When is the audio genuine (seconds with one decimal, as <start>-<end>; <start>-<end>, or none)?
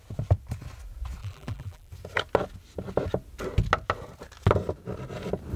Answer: 0.0-1.2; 1.9-5.6